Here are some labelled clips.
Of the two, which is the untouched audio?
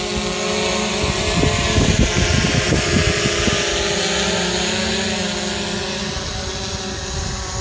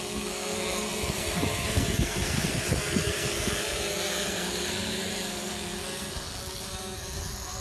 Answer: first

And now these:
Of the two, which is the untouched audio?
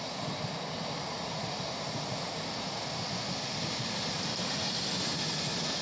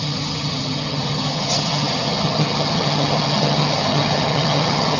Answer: first